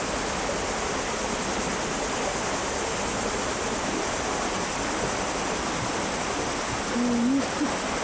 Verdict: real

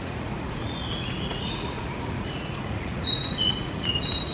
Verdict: fake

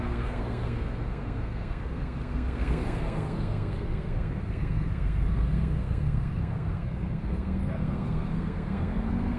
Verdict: fake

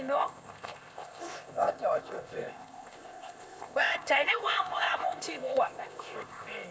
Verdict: fake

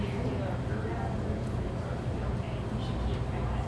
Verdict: real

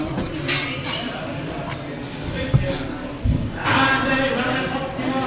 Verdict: real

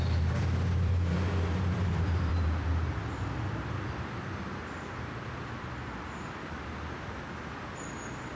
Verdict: fake